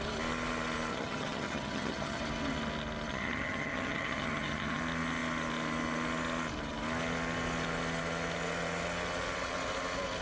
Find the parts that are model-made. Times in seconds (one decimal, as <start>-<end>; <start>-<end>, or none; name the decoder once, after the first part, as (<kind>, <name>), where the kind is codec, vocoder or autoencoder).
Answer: 0.9-2.2 (vocoder, HiFi-GAN); 3.1-4.8